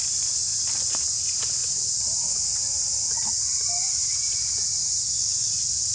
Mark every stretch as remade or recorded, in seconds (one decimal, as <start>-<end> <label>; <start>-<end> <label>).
0.0-4.8 recorded; 4.8-5.5 remade; 5.5-5.9 recorded